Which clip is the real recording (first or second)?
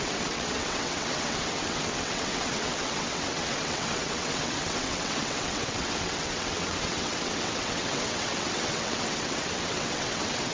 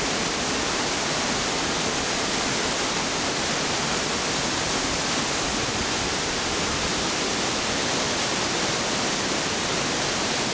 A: second